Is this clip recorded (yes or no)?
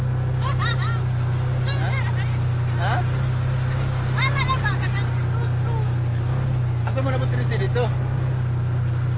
yes